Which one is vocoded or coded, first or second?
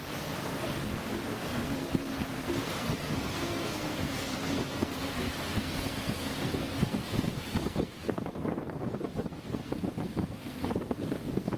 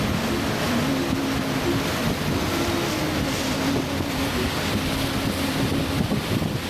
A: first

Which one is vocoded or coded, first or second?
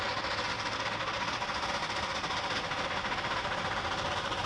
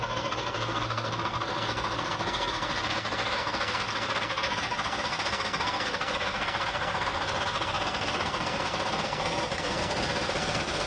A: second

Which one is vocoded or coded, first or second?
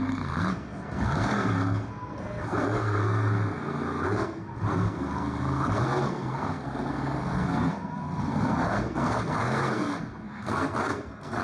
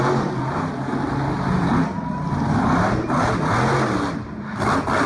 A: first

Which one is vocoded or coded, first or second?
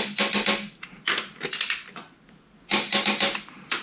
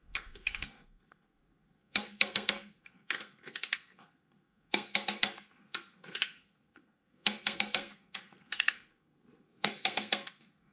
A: second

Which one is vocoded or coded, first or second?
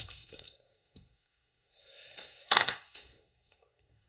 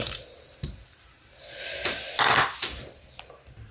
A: first